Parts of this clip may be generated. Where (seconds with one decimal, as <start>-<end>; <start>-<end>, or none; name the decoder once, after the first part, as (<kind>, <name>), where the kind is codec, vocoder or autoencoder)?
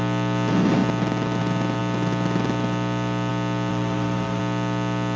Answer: 3.7-4.4 (vocoder, BigVGAN v2)